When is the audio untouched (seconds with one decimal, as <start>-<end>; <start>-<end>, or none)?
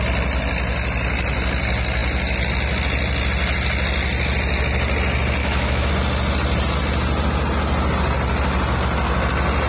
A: 0.0-5.4; 5.9-9.7